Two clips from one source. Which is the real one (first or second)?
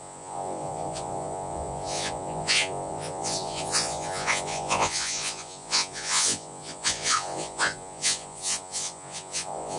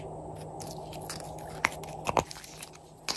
second